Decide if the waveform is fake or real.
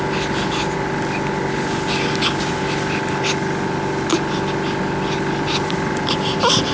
real